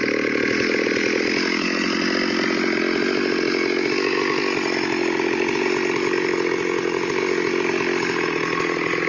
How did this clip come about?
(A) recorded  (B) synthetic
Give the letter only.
A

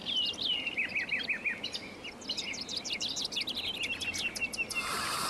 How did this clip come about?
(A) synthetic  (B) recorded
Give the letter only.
B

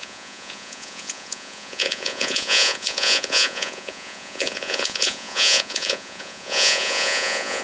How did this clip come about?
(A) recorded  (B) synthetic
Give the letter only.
B